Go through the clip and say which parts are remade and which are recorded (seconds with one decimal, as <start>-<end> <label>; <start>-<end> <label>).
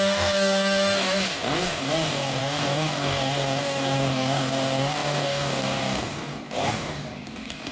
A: 0.0-7.7 remade